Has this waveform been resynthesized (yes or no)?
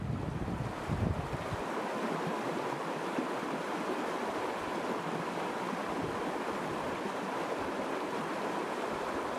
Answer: no